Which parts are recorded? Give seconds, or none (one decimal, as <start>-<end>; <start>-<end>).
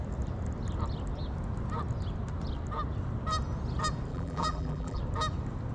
0.0-4.1; 5.0-5.7